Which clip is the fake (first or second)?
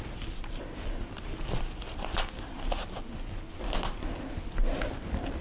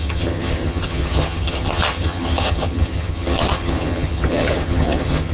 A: second